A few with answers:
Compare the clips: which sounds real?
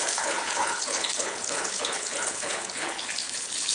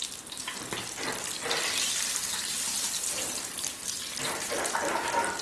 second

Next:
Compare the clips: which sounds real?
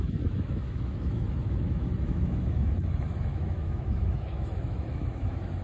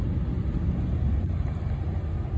second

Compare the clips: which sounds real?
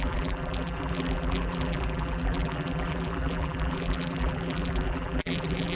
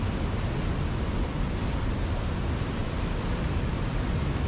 second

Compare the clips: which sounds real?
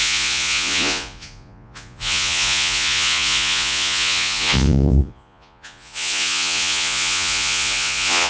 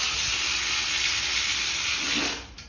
second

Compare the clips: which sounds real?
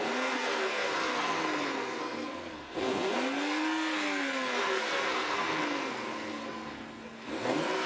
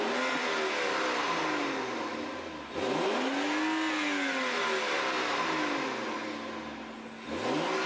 second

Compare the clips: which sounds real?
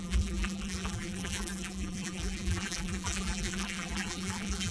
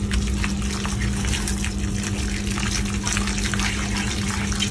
second